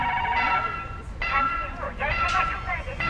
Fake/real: fake